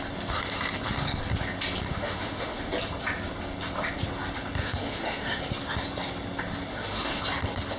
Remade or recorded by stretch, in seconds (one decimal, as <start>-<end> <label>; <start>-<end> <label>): 0.0-1.9 recorded; 1.9-2.7 remade; 2.7-4.6 recorded; 4.6-5.4 remade; 5.4-6.7 recorded; 6.7-7.2 remade; 7.2-7.8 recorded